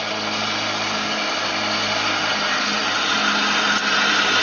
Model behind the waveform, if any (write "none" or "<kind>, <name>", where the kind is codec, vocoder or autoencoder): none